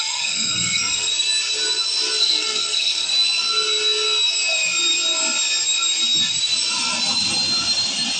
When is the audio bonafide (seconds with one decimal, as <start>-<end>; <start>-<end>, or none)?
1.1-2.2; 3.1-8.2